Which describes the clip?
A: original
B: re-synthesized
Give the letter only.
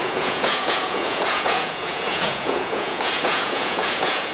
B